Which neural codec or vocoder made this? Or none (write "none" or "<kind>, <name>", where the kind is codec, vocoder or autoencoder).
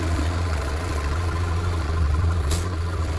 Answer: vocoder, Vocos